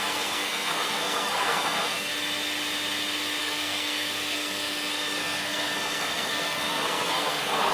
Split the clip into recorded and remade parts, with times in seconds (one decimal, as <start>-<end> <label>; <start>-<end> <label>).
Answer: 0.0-2.1 remade; 2.1-3.4 recorded; 3.4-7.7 remade